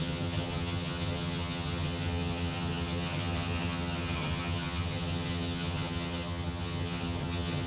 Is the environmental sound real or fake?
fake